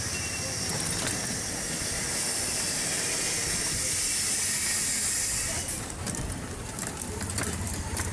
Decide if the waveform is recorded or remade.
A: recorded